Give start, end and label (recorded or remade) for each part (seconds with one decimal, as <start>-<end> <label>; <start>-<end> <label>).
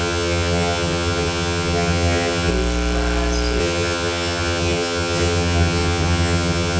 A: 0.0-2.5 remade; 2.5-3.6 recorded; 3.6-6.8 remade